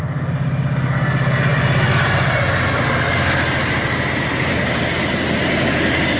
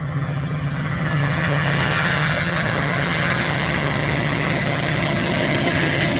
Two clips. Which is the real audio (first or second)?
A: first